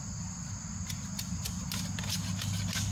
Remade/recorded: recorded